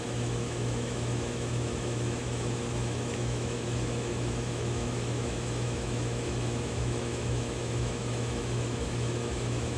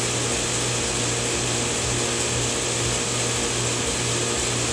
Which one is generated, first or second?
first